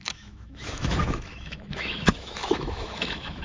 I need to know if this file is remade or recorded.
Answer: remade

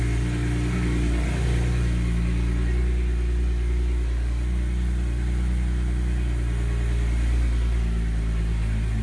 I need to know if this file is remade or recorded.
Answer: recorded